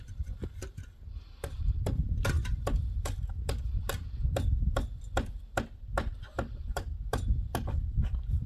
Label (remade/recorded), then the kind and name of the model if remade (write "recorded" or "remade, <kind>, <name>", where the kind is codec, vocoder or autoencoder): remade, vocoder, BigVGAN v2